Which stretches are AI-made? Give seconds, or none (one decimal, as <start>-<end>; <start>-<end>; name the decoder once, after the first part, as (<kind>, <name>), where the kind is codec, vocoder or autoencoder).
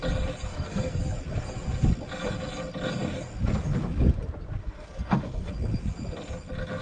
0.5-1.0 (codec, SNAC); 4.6-5.5